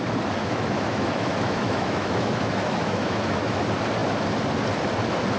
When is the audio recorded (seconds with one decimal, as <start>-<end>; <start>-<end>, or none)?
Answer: 0.0-0.4; 3.6-5.4